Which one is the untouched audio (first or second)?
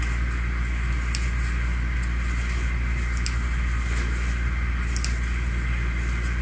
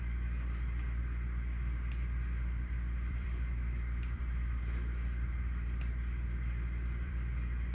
first